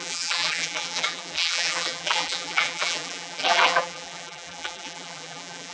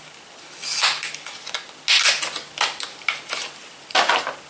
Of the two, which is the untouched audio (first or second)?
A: second